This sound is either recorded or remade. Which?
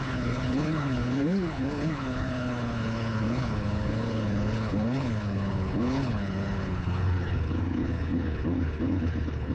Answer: remade